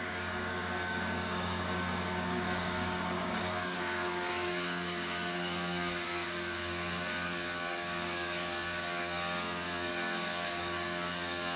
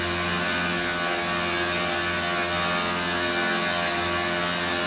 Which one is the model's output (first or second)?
first